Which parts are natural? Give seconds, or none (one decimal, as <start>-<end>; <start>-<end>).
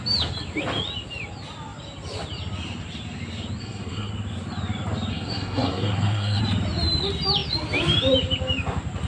0.0-3.6; 4.1-5.1; 6.4-9.1